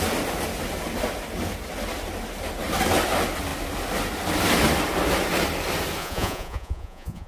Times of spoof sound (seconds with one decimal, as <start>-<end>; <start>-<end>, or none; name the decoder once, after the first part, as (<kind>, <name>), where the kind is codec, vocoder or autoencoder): 6.0-7.3 (vocoder, Vocos)